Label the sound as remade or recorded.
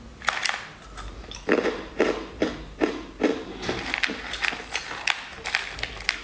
recorded